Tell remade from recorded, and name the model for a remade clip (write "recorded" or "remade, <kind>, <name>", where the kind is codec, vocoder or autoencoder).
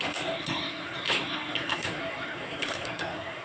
remade, codec, SNAC